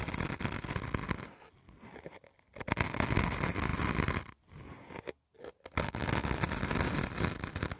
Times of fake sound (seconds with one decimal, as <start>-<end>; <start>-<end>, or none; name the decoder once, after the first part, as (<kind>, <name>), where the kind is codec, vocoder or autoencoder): none